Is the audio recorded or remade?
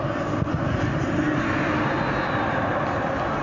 recorded